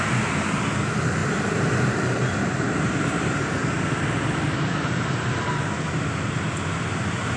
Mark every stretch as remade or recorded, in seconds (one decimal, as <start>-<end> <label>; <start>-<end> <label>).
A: 0.0-1.2 recorded; 1.2-5.6 remade; 5.6-7.4 recorded